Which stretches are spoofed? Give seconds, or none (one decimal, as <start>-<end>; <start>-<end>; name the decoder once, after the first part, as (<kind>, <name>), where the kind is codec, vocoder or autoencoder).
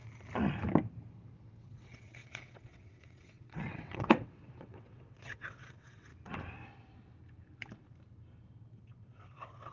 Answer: 1.6-6.1 (vocoder, WaveNeXt); 8.8-9.7